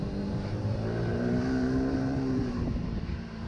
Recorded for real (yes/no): no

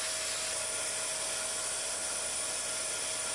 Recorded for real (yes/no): yes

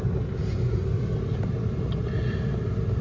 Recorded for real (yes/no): no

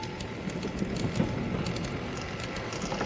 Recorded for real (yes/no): yes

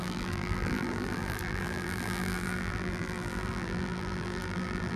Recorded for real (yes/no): no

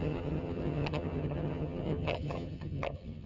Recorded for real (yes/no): no